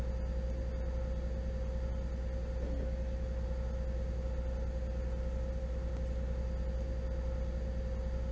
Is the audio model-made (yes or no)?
no